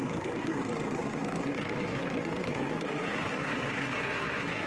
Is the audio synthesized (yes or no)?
yes